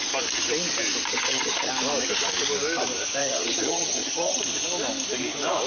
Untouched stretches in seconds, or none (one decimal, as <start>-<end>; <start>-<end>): 0.0-1.1; 1.7-3.2; 4.4-5.7